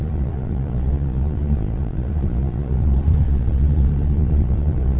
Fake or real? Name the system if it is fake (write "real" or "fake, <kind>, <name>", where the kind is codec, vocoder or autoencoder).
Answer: fake, vocoder, Vocos